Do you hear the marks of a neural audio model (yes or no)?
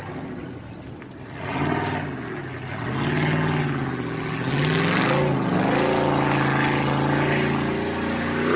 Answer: no